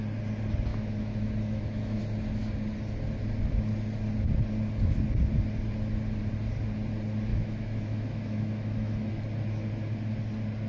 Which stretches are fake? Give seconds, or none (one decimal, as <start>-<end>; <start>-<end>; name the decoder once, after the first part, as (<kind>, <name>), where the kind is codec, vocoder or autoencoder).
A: 0.7-2.0 (autoencoder, DAC-VAE); 7.3-9.1